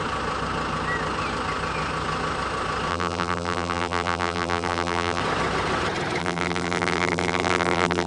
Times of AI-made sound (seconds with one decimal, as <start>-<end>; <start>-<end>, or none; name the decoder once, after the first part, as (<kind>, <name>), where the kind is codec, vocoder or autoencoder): 2.9-5.2 (vocoder, BigVGAN v2); 6.2-8.1